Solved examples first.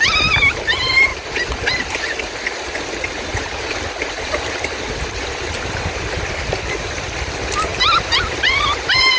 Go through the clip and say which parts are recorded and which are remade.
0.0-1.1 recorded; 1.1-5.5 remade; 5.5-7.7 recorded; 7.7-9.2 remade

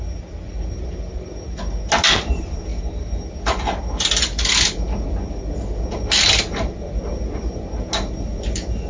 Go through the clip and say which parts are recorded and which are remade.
0.0-8.9 recorded

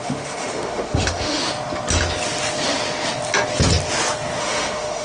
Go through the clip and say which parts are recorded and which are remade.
0.0-1.4 remade; 1.4-4.4 recorded; 4.4-5.0 remade